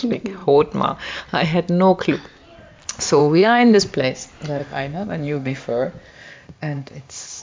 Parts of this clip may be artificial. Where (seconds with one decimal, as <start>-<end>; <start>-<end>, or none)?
3.2-3.8; 4.6-5.6; 6.1-7.4